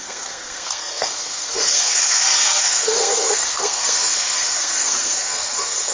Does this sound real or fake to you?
fake